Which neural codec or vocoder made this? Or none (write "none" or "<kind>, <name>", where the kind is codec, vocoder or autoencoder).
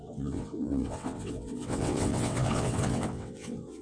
vocoder, WaveNeXt